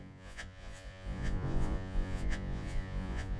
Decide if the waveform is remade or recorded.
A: remade